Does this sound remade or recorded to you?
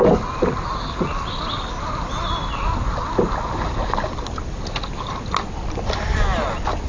recorded